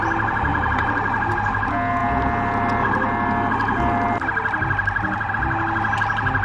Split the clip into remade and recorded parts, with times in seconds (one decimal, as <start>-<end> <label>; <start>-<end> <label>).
0.0-0.5 recorded; 0.5-1.3 remade; 1.3-6.4 recorded